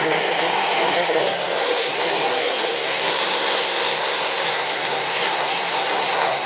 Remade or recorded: remade